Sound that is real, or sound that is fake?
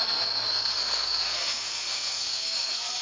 fake